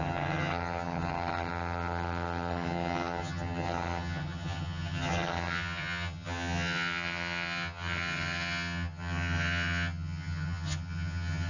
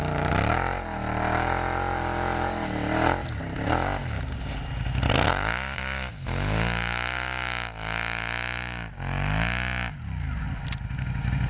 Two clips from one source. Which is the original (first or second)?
second